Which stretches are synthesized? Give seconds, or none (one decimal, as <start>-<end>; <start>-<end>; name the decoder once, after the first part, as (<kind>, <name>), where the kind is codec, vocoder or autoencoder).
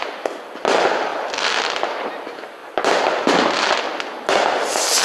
none